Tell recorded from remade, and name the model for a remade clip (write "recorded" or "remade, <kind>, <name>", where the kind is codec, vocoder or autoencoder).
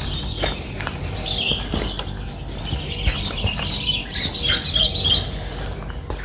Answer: recorded